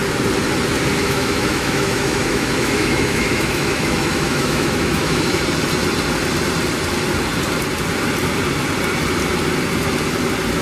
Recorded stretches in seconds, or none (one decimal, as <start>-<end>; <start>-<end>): 0.0-0.9; 5.4-10.6